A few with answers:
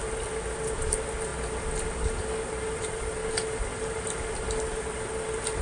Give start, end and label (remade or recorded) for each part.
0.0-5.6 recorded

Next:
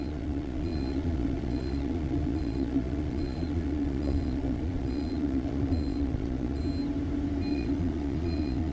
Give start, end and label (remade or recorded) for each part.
0.0-6.6 remade; 6.6-7.5 recorded; 7.5-8.7 remade

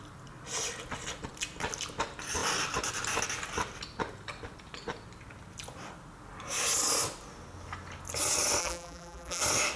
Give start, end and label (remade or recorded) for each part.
0.0-8.6 recorded; 8.6-9.4 remade; 9.4-9.8 recorded

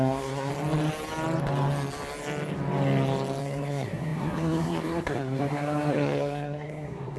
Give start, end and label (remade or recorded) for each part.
0.0-0.5 remade; 0.5-3.4 recorded; 3.4-7.2 remade

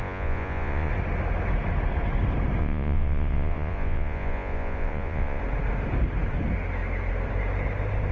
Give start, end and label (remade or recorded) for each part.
0.0-0.9 remade; 0.9-2.6 recorded; 2.6-5.4 remade; 5.4-8.1 recorded

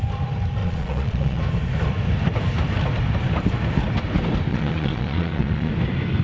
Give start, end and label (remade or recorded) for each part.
0.0-0.6 recorded; 0.6-1.4 remade; 1.4-4.5 recorded; 4.5-5.7 remade; 5.7-6.2 recorded

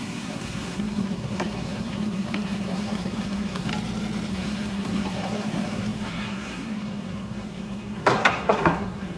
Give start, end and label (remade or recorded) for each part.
0.0-3.7 remade; 3.7-4.3 recorded; 4.3-9.2 remade